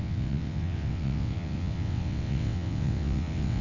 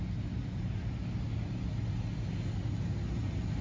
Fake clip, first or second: first